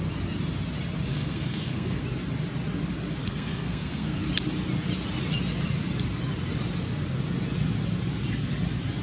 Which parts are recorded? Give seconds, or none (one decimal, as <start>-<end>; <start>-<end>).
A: 0.0-1.1; 2.0-3.2; 4.2-9.0